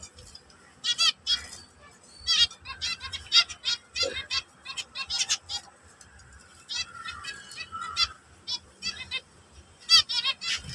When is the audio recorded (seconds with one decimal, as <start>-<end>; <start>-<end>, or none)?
0.0-10.7